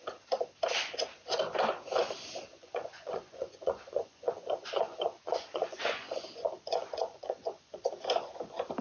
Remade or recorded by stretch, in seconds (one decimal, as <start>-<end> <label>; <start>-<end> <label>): 0.0-2.5 recorded; 2.5-7.8 remade; 7.8-8.8 recorded